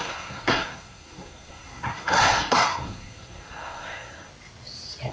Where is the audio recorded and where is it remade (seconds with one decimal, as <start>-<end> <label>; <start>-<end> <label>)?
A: 0.0-4.3 remade; 4.3-5.1 recorded